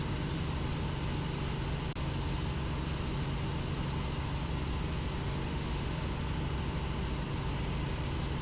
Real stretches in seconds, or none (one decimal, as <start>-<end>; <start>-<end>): 0.0-5.5; 6.0-8.4